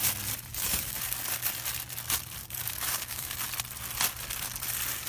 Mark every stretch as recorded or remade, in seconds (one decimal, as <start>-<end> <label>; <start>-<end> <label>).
0.0-0.5 recorded; 0.5-1.0 remade; 1.0-2.4 recorded; 2.4-3.4 remade; 3.4-5.1 recorded